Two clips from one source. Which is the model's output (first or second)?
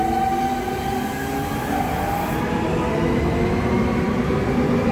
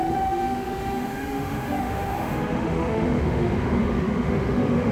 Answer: second